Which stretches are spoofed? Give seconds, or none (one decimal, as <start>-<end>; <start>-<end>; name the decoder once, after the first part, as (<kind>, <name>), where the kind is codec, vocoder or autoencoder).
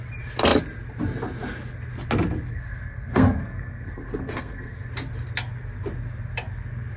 2.5-4.9 (codec, SNAC)